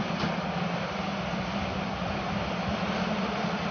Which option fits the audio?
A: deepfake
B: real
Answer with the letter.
A